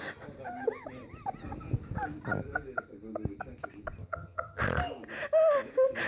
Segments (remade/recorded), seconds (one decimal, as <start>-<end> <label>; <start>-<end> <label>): 0.0-4.0 recorded; 4.0-4.6 remade; 4.6-6.1 recorded